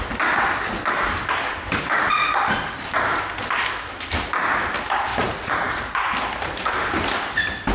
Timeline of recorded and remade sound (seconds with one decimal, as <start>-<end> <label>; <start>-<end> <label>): 0.0-5.1 recorded; 5.1-6.1 remade; 6.1-7.7 recorded